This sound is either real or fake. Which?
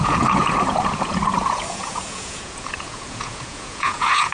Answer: fake